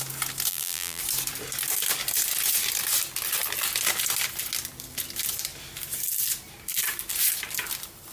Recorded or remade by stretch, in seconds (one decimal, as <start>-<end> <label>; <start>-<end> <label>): 0.0-0.5 recorded; 0.5-1.0 remade; 1.0-8.1 recorded